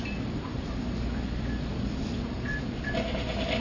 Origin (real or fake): real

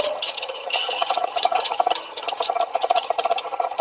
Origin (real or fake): fake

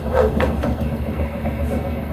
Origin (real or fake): fake